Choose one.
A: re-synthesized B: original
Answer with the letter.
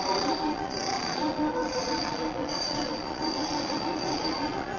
A